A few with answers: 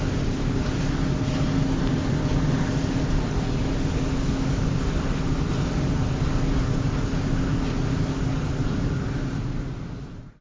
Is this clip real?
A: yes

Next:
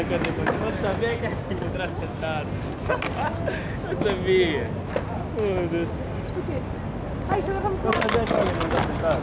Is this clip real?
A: yes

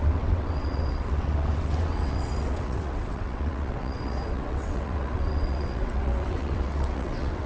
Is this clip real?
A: no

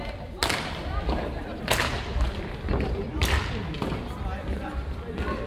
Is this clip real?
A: yes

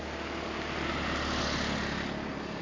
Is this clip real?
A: yes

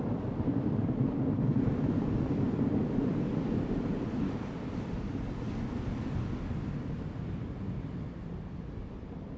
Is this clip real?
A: yes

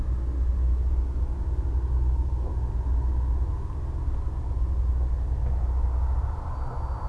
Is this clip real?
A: yes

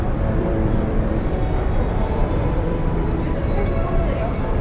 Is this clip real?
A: no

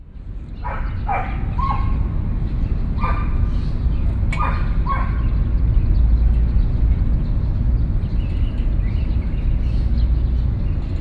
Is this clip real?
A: yes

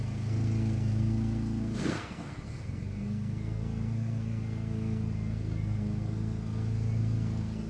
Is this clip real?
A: no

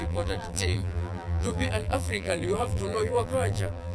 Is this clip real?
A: no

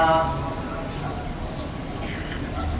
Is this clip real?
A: yes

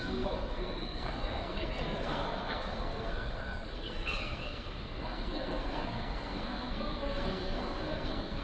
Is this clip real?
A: no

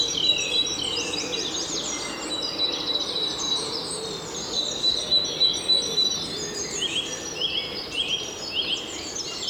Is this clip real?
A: yes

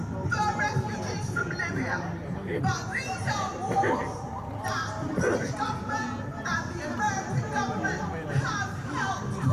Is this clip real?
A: yes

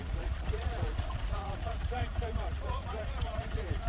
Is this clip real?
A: no